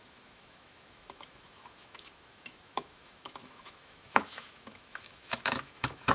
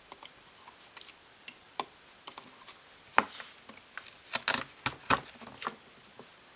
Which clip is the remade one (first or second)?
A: first